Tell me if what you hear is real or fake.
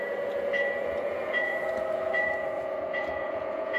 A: fake